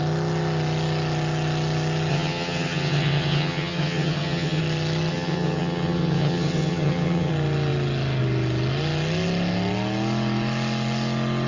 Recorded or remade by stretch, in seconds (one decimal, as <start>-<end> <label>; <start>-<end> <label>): 0.0-2.1 recorded; 2.1-4.6 remade; 4.6-5.1 recorded; 5.1-7.3 remade; 7.3-11.5 recorded